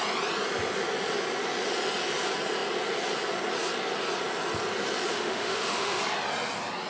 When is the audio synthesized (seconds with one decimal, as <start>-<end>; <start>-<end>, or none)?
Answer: 5.1-6.0